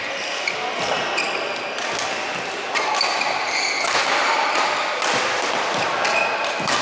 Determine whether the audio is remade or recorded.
recorded